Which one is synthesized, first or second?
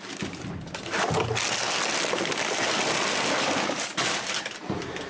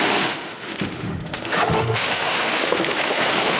second